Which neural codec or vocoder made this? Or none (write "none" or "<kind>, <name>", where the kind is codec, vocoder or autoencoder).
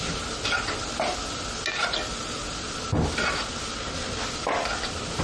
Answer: none